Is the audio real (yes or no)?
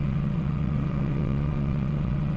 no